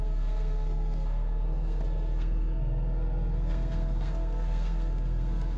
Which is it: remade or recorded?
remade